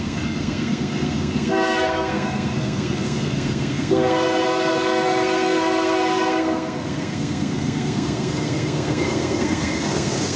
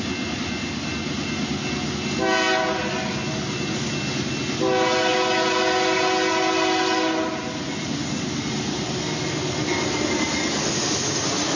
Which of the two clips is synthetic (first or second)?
first